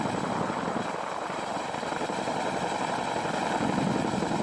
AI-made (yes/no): no